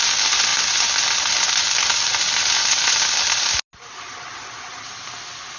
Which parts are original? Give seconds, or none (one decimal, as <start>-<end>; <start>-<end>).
0.0-5.6